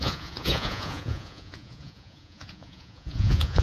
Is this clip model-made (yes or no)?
yes